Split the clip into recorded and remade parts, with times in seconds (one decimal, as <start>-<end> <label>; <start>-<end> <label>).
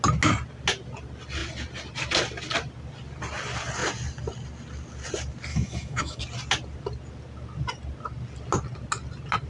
0.0-5.5 recorded; 5.5-6.2 remade; 6.2-9.5 recorded